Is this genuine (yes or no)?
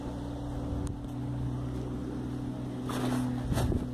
yes